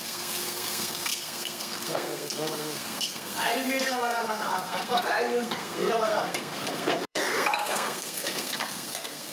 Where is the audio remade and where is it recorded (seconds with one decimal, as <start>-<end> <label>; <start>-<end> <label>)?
0.0-9.3 remade